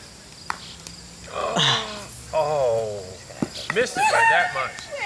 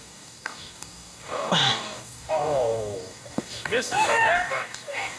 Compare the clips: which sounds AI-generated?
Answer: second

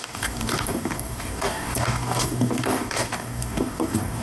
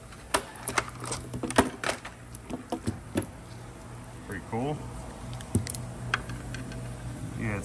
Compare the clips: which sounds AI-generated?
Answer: first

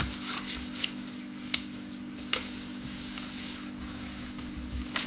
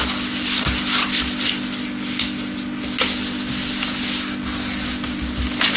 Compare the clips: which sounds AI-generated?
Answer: first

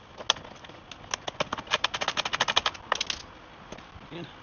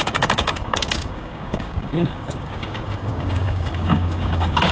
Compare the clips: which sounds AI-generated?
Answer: second